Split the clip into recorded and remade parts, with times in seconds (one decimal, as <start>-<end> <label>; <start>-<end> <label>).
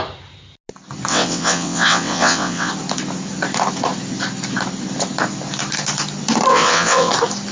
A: 0.0-1.1 recorded; 1.1-2.7 remade; 2.7-6.5 recorded; 6.5-7.1 remade; 7.1-7.5 recorded